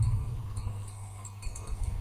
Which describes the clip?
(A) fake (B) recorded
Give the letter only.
A